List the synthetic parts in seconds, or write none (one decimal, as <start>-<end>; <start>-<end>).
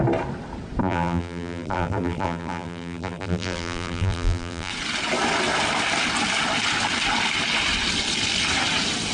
0.8-4.7